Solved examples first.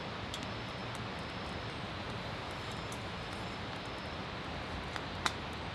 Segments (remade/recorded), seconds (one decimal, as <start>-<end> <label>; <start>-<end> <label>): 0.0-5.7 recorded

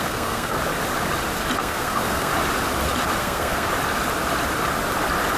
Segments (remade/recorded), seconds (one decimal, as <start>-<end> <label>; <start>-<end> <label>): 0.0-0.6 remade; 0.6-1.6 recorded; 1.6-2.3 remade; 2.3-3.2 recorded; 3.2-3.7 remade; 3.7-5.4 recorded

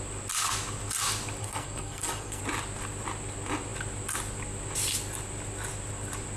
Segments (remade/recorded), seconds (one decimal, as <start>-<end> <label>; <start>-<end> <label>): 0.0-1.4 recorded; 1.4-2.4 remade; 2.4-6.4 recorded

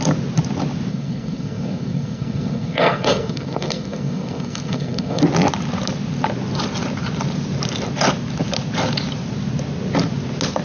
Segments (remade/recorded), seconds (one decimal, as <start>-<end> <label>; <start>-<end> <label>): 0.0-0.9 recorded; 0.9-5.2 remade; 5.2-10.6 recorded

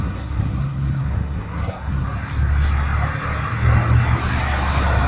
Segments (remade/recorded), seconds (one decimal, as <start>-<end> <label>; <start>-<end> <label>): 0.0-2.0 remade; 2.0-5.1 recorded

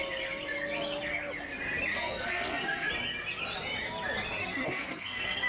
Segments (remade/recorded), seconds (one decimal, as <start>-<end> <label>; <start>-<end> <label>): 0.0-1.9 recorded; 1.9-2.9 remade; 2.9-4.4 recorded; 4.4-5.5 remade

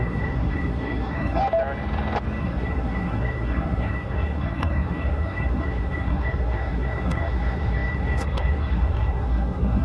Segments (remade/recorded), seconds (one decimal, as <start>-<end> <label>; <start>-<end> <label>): 0.0-1.4 remade; 1.4-2.4 recorded; 2.4-9.8 remade